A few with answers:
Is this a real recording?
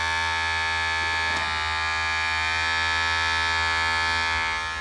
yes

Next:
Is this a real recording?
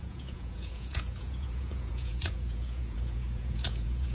no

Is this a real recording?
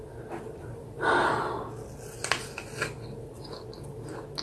yes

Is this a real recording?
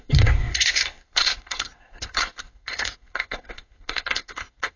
no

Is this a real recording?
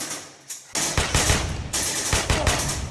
yes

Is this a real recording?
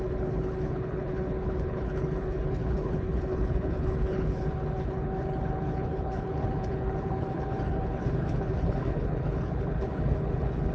no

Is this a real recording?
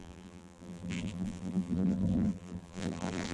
no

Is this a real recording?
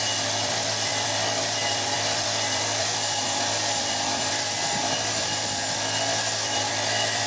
no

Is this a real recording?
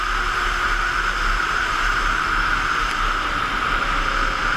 yes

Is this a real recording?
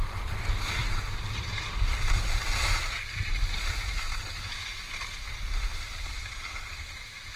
yes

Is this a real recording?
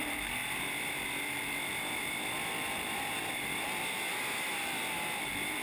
no